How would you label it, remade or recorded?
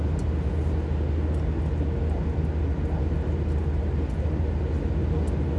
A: recorded